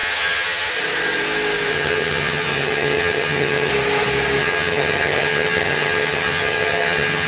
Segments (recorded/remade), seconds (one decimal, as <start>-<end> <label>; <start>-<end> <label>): 0.0-0.7 remade; 0.7-1.7 recorded; 1.7-3.7 remade; 3.7-4.4 recorded; 4.4-7.3 remade